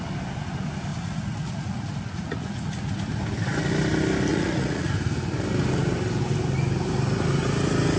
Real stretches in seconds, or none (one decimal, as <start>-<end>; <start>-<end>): 0.0-0.9; 2.9-4.3; 4.9-8.0